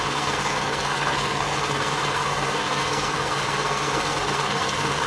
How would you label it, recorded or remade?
remade